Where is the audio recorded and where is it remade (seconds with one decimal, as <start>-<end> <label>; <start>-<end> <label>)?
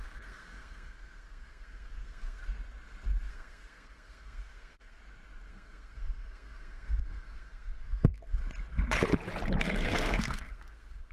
0.0-2.4 remade; 2.4-3.3 recorded; 3.3-5.0 remade; 5.0-5.5 recorded; 5.5-8.4 remade; 8.4-9.6 recorded; 9.6-11.1 remade